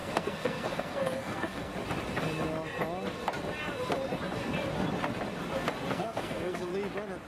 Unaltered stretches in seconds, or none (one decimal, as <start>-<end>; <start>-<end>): 1.7-5.9; 6.7-7.3

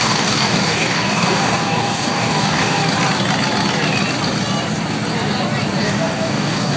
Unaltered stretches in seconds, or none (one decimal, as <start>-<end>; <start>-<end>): 2.8-5.8

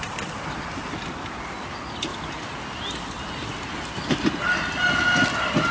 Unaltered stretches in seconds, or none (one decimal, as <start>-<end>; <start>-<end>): 0.0-5.7

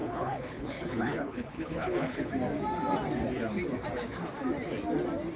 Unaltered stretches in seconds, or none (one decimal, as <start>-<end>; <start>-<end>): 2.3-5.4

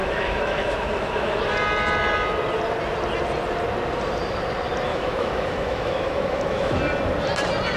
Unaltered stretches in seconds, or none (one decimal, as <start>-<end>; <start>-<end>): 1.4-4.9; 6.8-7.8